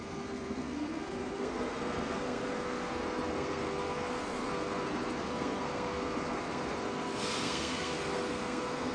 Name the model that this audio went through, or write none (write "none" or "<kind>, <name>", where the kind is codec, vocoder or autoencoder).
codec, SNAC